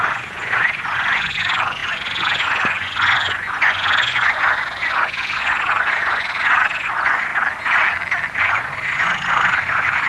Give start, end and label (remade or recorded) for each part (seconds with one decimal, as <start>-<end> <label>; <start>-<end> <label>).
0.0-7.3 remade; 7.3-8.4 recorded; 8.4-10.1 remade